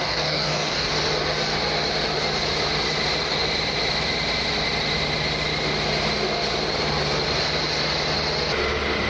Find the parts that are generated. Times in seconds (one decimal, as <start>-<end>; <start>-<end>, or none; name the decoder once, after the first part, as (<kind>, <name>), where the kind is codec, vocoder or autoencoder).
0.0-0.9 (codec, DAC)